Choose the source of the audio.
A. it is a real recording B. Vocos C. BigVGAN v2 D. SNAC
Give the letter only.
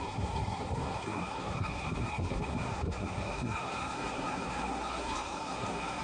D